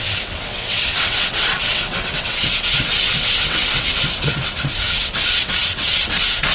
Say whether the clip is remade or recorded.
remade